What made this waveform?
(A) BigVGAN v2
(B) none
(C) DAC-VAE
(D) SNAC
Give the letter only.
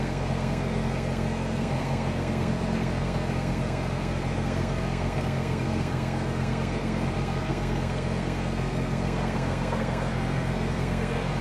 D